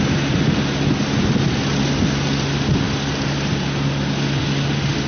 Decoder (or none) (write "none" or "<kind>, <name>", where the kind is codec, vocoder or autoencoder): none